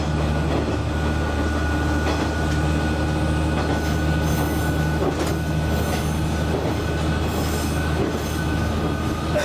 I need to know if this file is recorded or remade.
recorded